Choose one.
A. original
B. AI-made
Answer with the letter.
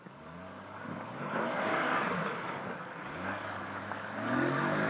B